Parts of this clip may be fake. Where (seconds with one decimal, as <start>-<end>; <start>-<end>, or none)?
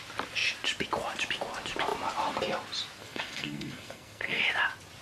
3.0-4.4